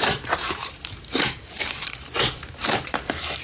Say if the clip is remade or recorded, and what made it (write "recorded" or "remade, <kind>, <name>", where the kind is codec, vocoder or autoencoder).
remade, vocoder, BigVGAN v2